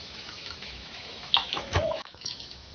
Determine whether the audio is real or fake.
fake